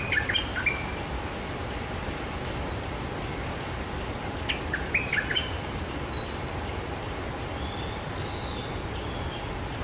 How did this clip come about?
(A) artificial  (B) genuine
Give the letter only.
B